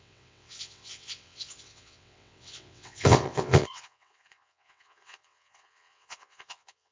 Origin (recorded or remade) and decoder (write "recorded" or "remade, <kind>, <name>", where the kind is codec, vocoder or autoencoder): remade, vocoder, WaveNeXt